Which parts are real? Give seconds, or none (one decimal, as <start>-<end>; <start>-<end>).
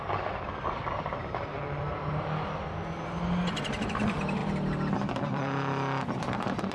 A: 1.2-3.7; 4.4-6.2